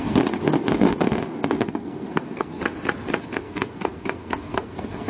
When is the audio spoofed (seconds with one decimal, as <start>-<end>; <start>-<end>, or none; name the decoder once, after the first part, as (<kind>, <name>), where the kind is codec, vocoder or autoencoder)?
0.0-2.6 (codec, SNAC); 3.2-5.1